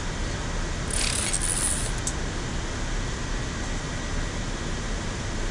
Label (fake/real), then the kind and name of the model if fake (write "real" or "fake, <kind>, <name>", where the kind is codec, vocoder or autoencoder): real